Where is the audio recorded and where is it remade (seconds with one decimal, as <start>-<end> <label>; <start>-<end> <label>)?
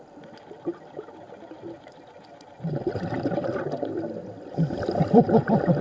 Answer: 0.0-5.8 recorded